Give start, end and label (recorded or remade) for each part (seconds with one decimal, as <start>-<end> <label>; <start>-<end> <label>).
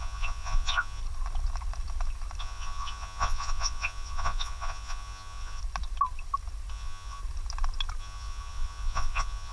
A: 0.0-1.0 remade; 1.0-2.4 recorded; 2.4-5.6 remade; 5.6-6.7 recorded; 6.7-7.2 remade; 7.2-8.0 recorded; 8.0-9.5 remade